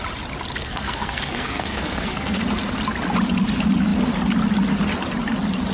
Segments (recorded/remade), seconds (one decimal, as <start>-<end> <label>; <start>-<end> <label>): 0.0-0.6 recorded; 0.6-2.4 remade; 2.4-5.7 recorded